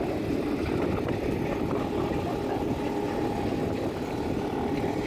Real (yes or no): yes